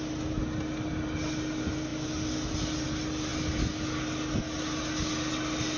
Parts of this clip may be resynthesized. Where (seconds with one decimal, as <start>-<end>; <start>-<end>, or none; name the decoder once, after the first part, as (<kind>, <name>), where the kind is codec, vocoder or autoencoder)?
none